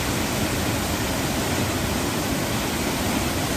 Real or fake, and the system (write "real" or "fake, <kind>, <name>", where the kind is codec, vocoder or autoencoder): real